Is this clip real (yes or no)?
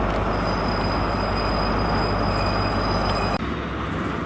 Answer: yes